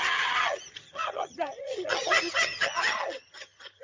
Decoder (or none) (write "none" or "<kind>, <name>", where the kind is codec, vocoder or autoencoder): vocoder, HiFi-GAN